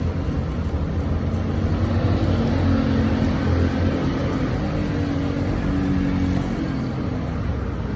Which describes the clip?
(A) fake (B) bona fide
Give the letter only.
B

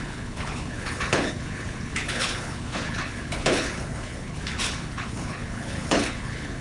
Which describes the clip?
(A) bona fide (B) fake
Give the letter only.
B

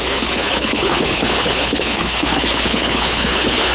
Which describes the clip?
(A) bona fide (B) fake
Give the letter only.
B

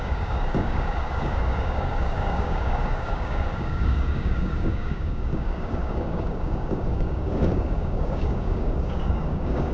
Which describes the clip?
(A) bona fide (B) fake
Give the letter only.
B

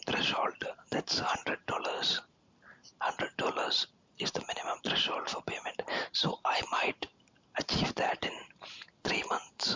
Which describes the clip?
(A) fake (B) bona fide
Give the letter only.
A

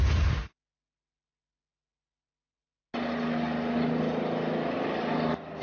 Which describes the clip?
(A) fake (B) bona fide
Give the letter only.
B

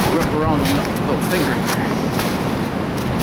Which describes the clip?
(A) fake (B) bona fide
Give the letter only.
B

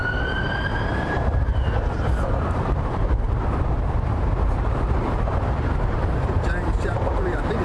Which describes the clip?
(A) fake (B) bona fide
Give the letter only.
A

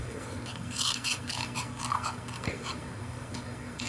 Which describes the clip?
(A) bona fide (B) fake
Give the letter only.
B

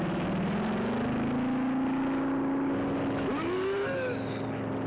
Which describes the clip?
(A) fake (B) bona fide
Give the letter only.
B